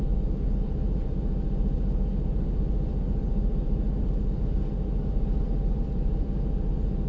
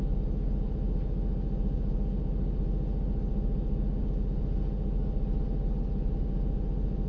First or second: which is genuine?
second